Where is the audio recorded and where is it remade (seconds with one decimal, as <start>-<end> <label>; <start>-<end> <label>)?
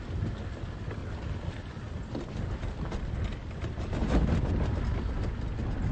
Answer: 0.0-1.0 recorded; 1.0-4.5 remade; 4.5-5.9 recorded